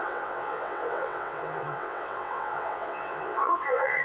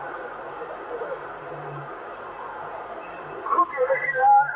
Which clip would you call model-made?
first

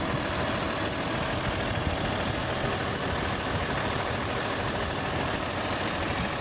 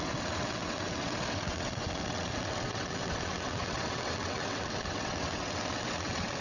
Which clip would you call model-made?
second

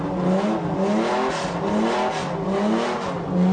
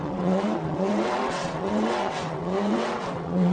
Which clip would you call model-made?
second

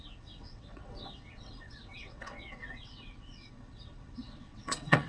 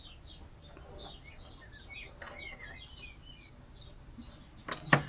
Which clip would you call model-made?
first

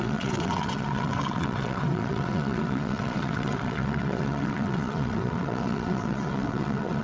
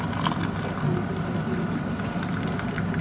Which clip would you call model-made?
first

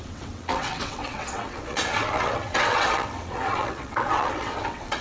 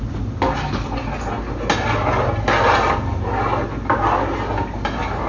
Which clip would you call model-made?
first